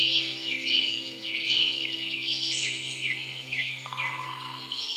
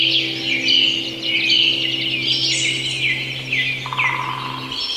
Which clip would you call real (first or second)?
second